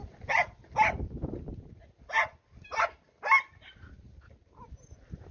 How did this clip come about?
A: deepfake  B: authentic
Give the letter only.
B